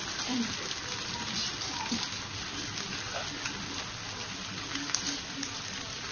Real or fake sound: real